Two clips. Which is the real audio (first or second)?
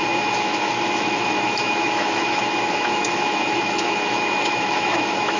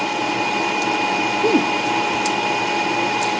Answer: second